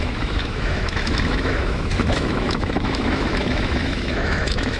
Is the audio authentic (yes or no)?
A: no